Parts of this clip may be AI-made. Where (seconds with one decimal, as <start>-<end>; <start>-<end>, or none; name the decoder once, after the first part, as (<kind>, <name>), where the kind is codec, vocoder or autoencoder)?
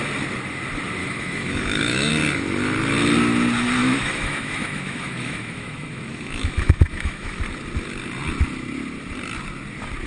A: 1.0-2.1 (autoencoder, DAC-VAE); 3.8-7.4